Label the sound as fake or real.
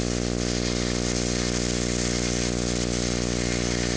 real